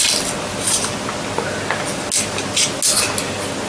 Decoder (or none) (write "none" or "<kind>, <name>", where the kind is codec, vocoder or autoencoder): none